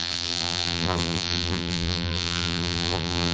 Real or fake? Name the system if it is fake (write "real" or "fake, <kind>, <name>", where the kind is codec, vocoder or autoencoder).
fake, vocoder, BigVGAN v2